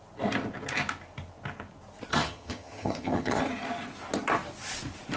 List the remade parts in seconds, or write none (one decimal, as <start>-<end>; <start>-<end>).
2.1-3.4